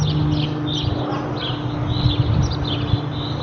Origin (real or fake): real